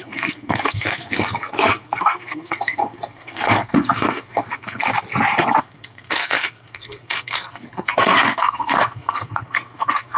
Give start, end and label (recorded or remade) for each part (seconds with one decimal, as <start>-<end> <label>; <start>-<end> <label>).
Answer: 0.0-4.9 remade; 4.9-5.6 recorded; 5.6-10.2 remade